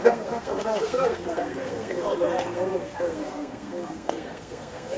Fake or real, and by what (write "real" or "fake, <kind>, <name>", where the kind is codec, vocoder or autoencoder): fake, codec, SNAC